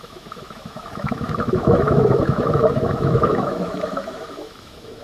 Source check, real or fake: fake